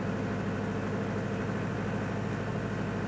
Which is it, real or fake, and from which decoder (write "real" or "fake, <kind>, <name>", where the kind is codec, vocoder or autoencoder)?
real